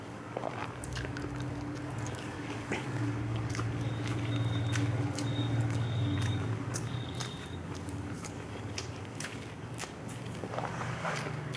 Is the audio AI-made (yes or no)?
yes